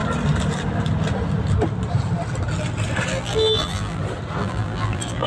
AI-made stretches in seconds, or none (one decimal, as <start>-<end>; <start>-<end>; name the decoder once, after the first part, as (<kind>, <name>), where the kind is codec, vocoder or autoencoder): 3.1-4.0 (vocoder, BigVGAN v2); 4.4-5.3